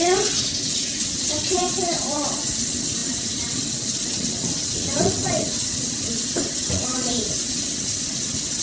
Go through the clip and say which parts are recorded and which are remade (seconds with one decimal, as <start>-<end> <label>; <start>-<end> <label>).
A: 0.0-8.6 remade